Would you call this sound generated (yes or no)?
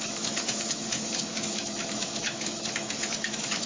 yes